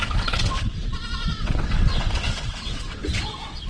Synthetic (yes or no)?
yes